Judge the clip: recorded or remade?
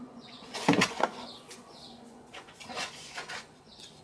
remade